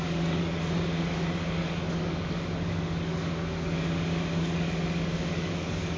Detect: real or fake fake